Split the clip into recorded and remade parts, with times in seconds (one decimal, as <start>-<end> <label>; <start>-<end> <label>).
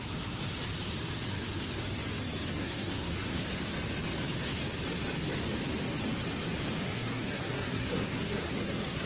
0.0-2.5 recorded; 2.5-3.4 remade; 3.4-6.8 recorded; 6.8-9.1 remade